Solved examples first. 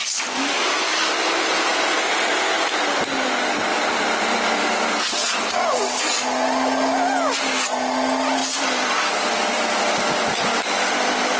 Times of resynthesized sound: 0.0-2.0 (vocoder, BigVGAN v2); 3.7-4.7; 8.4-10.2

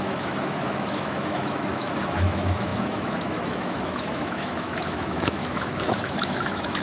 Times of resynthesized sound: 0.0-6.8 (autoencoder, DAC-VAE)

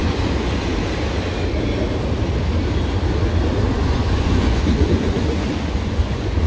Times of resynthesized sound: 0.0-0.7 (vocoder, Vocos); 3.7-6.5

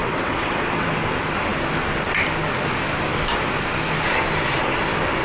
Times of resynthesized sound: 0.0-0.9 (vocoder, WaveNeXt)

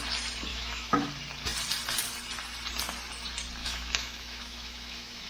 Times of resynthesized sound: 0.5-1.1 (autoencoder, DAC-VAE); 3.6-5.3